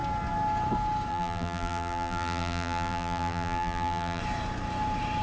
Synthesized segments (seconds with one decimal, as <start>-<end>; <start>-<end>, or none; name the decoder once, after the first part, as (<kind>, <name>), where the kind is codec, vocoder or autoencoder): 1.1-4.2 (vocoder, BigVGAN v2)